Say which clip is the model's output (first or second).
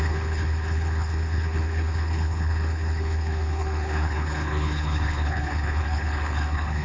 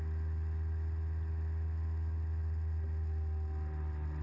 first